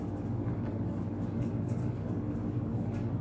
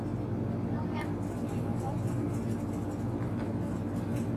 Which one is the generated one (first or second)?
first